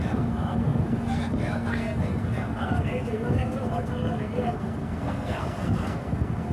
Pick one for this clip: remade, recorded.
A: remade